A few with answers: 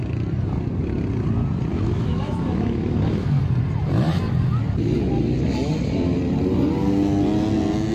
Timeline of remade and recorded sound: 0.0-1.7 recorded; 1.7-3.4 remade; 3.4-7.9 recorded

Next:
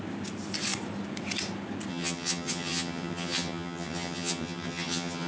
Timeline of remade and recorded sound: 0.0-1.9 recorded; 1.9-5.3 remade